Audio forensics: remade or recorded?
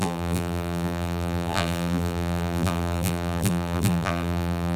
remade